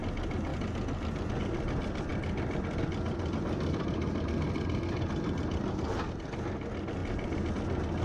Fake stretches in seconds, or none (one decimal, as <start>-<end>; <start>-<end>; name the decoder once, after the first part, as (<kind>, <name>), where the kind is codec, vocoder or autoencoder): none